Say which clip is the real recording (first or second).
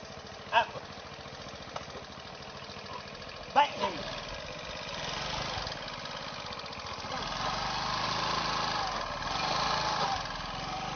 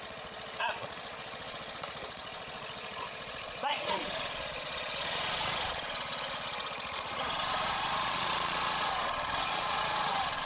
first